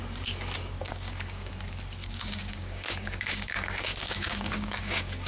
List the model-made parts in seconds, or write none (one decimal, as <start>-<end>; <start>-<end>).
0.8-1.5; 2.0-5.3